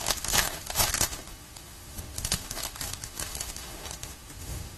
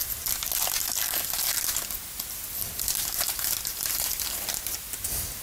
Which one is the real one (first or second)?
second